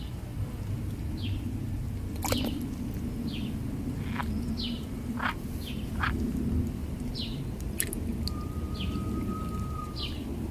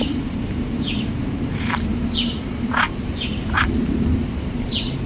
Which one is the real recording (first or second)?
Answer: first